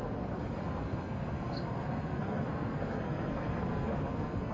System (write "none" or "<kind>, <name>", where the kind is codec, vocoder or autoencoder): codec, SNAC